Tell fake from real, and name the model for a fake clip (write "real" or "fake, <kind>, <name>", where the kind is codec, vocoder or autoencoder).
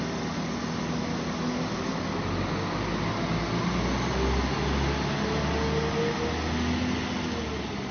real